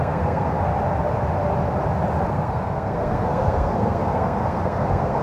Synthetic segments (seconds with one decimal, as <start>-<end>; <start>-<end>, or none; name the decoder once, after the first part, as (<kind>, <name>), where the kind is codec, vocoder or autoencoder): 0.0-0.7 (codec, SNAC); 2.3-5.2